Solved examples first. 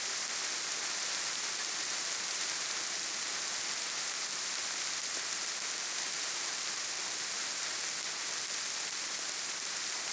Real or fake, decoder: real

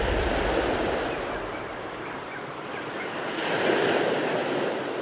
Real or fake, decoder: real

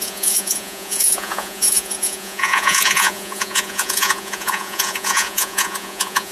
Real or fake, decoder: fake, vocoder, Vocos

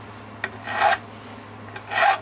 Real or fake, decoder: real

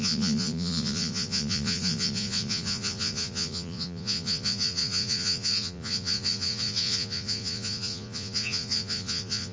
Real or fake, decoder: fake, vocoder, Vocos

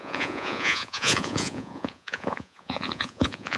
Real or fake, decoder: fake, vocoder, Vocos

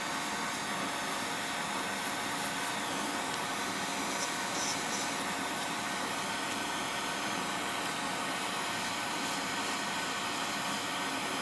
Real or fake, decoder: real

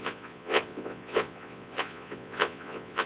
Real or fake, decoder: fake, vocoder, Vocos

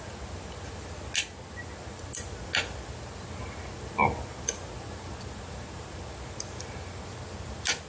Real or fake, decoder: real